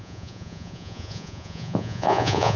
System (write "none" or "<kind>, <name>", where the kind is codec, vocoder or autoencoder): vocoder, Vocos